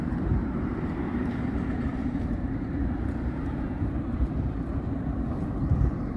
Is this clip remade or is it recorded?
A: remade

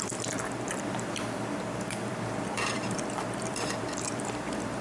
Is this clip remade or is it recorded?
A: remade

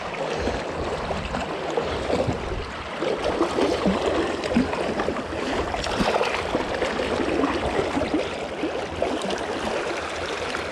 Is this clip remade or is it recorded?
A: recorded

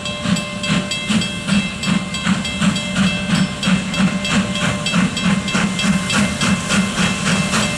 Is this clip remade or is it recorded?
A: recorded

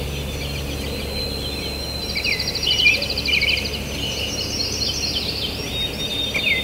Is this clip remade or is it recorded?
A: recorded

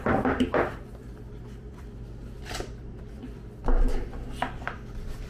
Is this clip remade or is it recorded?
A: remade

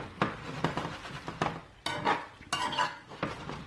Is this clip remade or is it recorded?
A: recorded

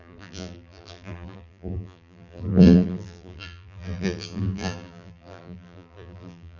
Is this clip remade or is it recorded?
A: remade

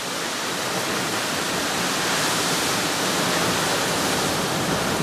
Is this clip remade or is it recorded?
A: recorded